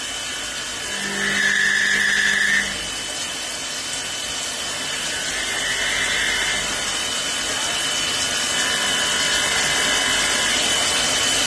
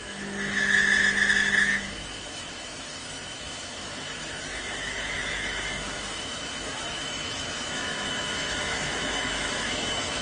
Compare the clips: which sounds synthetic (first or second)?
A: second